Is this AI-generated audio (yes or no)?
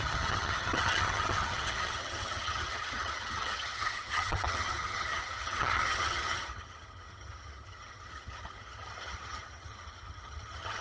yes